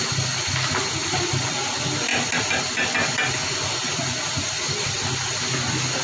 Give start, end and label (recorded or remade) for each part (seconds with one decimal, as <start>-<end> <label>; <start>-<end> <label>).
0.0-6.0 recorded